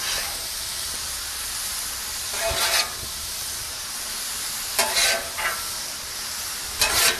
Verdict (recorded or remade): recorded